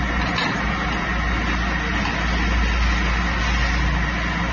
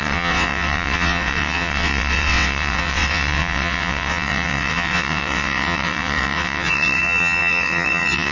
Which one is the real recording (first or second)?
first